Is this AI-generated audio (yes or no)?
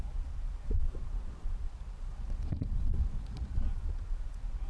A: yes